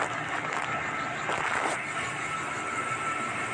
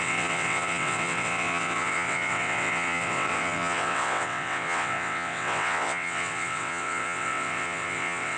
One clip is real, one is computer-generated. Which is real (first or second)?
first